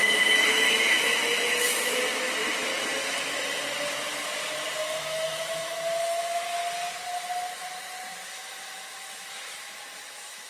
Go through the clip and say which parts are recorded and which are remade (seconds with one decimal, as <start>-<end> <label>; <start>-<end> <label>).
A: 0.0-2.7 remade; 2.7-4.8 recorded; 4.8-6.6 remade; 6.6-8.3 recorded; 8.3-10.5 remade